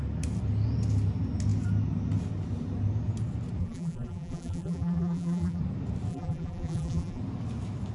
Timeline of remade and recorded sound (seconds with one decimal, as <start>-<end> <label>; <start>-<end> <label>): 0.0-3.6 recorded; 3.6-5.6 remade; 5.6-6.1 recorded; 6.1-7.2 remade; 7.2-7.9 recorded